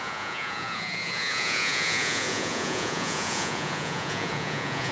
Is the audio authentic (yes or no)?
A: no